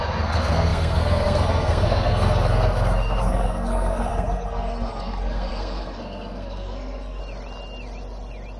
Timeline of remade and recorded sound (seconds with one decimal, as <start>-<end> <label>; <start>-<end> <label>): 0.0-7.2 remade; 7.2-8.6 recorded